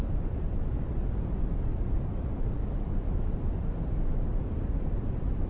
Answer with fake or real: fake